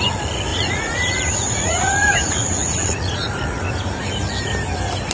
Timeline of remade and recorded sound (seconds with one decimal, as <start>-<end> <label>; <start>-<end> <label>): 0.0-0.5 recorded; 0.5-3.6 remade; 3.6-5.1 recorded